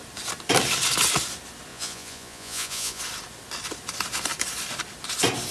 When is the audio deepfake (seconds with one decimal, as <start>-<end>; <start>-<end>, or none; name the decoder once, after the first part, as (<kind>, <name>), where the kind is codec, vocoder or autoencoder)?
1.7-3.0 (vocoder, Vocos)